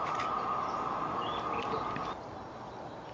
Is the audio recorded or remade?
recorded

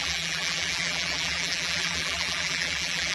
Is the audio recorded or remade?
remade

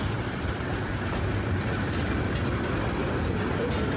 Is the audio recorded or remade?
remade